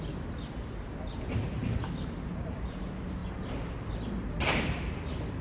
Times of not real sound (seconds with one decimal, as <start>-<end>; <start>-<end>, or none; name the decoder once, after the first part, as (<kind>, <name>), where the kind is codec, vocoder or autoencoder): 0.0-1.6 (vocoder, BigVGAN v2); 2.4-3.2; 4.4-5.4